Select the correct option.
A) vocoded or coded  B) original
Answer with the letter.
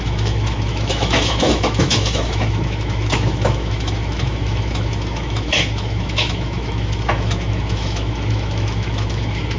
A